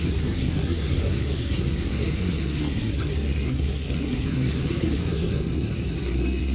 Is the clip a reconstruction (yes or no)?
yes